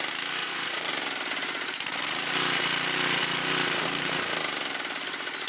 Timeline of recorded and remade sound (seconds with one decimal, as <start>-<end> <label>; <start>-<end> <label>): 0.0-0.4 recorded; 0.4-0.9 remade; 0.9-5.5 recorded